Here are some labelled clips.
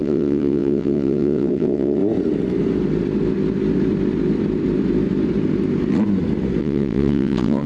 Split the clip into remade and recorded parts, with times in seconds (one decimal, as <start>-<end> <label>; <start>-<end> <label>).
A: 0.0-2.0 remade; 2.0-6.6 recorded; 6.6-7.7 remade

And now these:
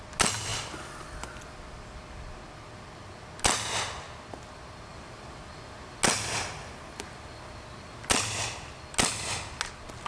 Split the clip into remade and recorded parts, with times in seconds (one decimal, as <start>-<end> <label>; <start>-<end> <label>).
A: 0.0-10.1 recorded

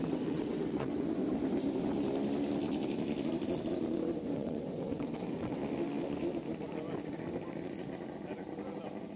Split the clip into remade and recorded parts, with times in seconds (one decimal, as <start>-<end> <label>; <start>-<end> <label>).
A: 0.0-1.2 remade; 1.2-4.3 recorded; 4.3-5.6 remade; 5.6-9.2 recorded

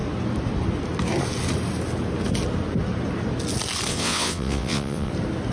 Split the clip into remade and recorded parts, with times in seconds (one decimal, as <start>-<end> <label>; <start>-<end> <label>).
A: 0.0-3.9 recorded; 3.9-5.1 remade; 5.1-5.5 recorded